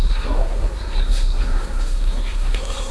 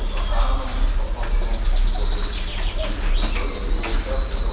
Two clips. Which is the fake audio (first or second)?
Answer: first